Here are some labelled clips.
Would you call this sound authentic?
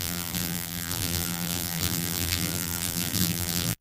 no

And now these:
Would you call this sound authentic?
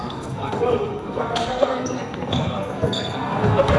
no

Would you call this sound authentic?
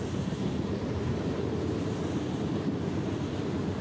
yes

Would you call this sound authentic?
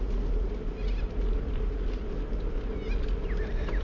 yes